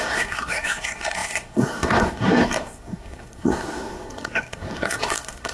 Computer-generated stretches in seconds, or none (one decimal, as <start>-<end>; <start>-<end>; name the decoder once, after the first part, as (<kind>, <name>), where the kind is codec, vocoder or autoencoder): 0.0-5.5 (codec, SNAC)